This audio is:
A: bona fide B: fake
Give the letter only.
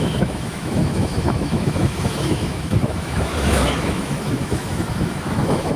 B